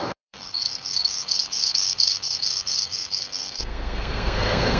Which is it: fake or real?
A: fake